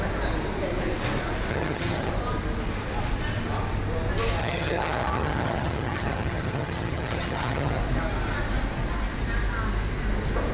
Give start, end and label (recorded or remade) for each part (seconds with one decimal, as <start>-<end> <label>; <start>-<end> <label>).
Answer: 0.0-1.5 recorded; 1.5-2.1 remade; 2.1-4.4 recorded; 4.4-7.8 remade; 7.8-10.5 recorded

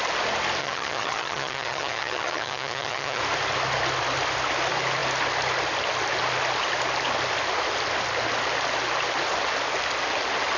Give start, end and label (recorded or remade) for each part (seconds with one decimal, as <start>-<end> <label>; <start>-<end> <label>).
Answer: 0.0-0.6 recorded; 0.6-3.2 remade; 3.2-10.6 recorded

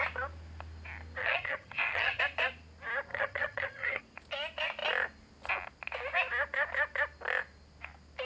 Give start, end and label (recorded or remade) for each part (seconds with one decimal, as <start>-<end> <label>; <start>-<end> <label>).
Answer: 0.0-1.2 recorded; 1.2-2.2 remade; 2.2-3.1 recorded; 3.1-4.0 remade; 4.0-8.3 recorded

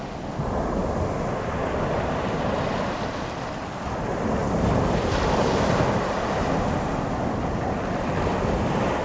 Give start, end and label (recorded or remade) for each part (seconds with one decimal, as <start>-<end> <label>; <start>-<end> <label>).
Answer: 0.0-9.0 recorded

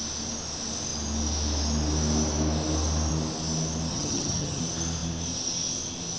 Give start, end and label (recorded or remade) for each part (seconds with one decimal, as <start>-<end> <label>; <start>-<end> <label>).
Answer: 0.0-3.9 recorded; 3.9-4.6 remade; 4.6-6.2 recorded

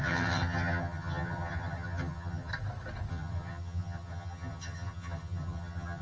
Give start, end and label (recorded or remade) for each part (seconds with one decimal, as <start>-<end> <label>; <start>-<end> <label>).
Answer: 0.0-2.5 remade; 2.5-3.1 recorded; 3.1-6.0 remade